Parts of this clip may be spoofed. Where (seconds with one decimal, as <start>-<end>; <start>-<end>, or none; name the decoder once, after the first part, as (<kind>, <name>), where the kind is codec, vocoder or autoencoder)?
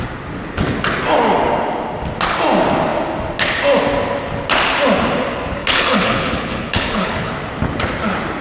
5.6-7.3 (codec, HILCodec)